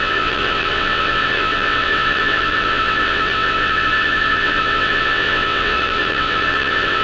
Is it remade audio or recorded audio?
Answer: remade